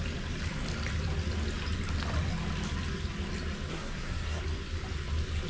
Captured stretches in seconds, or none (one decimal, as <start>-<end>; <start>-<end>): 0.0-3.7; 4.4-5.5